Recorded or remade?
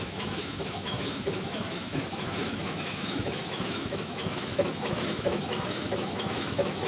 remade